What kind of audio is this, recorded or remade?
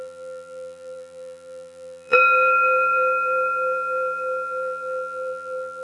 remade